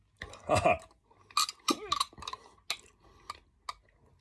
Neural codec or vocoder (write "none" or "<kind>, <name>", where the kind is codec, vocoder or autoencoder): none